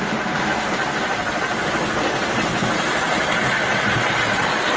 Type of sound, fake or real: real